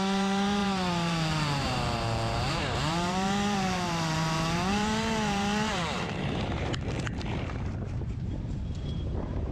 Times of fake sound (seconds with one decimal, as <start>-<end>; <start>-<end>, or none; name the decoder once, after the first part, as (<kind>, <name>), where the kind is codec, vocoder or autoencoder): 0.0-9.5 (vocoder, BigVGAN v2)